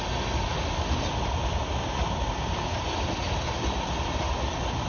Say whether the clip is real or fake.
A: real